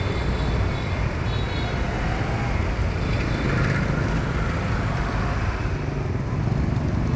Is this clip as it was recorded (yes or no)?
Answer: yes